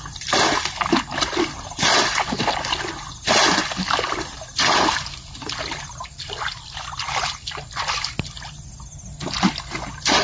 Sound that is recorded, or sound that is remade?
recorded